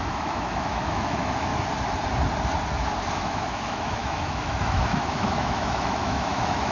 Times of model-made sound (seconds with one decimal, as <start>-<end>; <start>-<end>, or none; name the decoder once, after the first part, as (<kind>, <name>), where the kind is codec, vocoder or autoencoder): 0.0-1.5 (autoencoder, DAC-VAE); 3.1-6.7